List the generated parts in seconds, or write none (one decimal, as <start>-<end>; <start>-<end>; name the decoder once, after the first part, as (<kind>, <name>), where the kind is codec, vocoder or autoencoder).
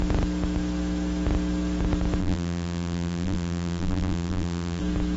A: 2.2-4.8 (vocoder, BigVGAN v2)